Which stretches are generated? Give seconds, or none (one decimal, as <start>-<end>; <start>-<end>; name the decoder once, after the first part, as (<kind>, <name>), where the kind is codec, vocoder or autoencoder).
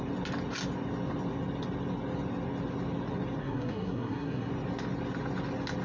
3.4-4.5 (codec, SNAC)